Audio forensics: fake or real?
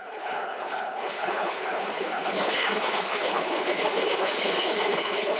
fake